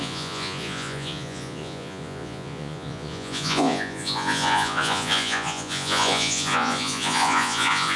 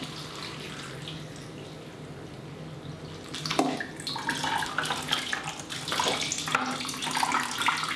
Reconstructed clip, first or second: first